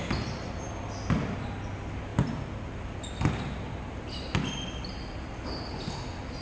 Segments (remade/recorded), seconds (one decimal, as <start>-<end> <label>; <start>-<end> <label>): 0.0-6.4 recorded